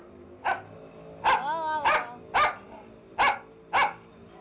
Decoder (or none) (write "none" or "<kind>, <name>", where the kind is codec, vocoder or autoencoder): none